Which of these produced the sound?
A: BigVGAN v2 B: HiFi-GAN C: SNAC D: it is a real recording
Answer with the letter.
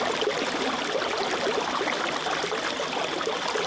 D